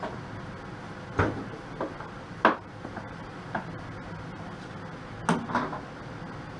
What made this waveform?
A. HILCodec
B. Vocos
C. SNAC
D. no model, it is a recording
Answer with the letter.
D